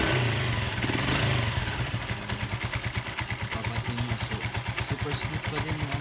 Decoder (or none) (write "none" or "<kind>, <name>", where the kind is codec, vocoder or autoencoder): none